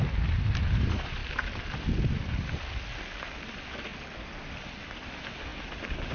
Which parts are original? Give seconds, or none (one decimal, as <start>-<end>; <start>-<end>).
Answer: 0.0-6.1